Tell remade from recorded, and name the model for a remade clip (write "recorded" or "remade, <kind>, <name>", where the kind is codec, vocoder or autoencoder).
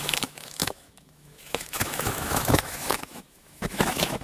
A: remade, autoencoder, DAC-VAE